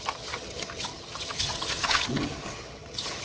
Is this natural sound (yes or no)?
no